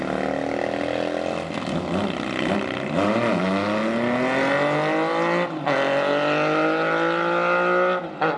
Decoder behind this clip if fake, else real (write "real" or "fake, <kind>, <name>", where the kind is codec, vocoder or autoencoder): real